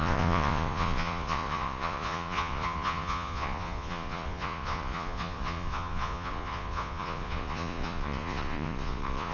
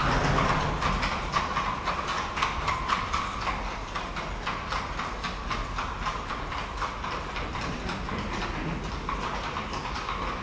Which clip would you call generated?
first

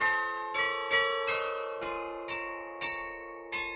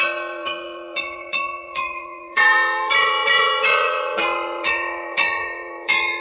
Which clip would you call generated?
second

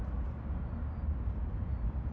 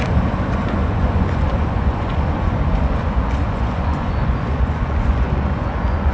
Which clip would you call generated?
second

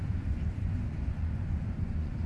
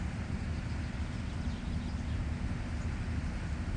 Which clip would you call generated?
first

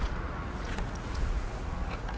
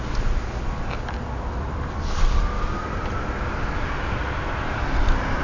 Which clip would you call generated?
first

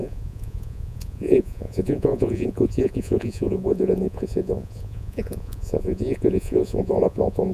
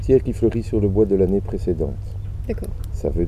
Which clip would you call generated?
first